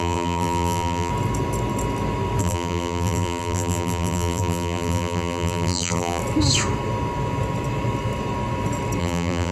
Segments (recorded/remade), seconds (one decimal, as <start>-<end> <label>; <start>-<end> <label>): 0.0-1.1 remade; 1.1-2.4 recorded; 2.4-6.2 remade; 6.2-9.0 recorded; 9.0-9.5 remade